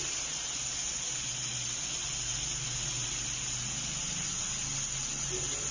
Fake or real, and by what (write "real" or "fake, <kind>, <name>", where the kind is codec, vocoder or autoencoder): real